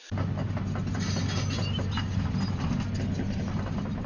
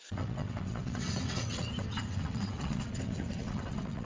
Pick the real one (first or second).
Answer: first